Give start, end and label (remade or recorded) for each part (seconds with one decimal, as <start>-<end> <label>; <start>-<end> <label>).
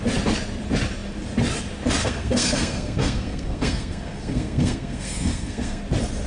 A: 0.0-2.0 recorded; 2.0-5.8 remade; 5.8-6.3 recorded